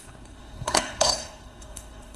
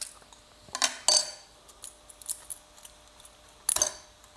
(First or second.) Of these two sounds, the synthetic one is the first